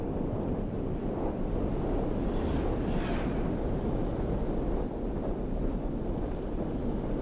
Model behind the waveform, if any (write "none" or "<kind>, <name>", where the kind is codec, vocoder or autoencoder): none